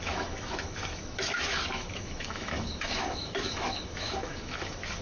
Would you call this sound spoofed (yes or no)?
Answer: yes